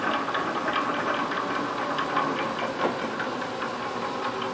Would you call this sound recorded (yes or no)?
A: yes